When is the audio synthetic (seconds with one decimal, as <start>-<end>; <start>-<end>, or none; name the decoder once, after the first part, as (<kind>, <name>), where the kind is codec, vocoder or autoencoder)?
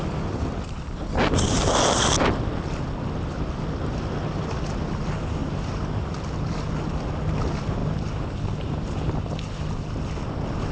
5.4-6.2 (vocoder, BigVGAN v2)